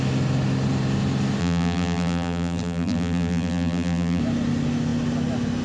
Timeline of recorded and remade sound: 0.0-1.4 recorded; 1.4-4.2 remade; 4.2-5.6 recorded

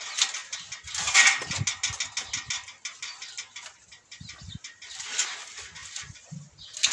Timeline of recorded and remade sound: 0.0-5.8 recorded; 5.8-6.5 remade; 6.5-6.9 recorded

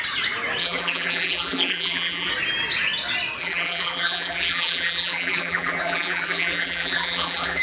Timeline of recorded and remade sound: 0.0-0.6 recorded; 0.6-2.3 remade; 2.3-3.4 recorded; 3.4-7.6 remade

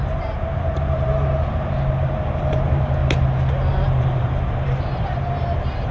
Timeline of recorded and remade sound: 0.0-1.1 remade; 1.1-2.0 recorded; 2.0-3.0 remade; 3.0-3.6 recorded; 3.6-5.9 remade

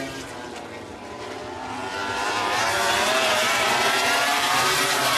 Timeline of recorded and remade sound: 0.0-0.9 recorded; 0.9-1.4 remade; 1.4-2.0 recorded; 2.0-5.2 remade

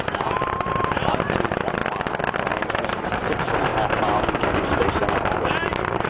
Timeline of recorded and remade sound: 0.0-1.8 remade; 1.8-2.5 recorded; 2.5-6.1 remade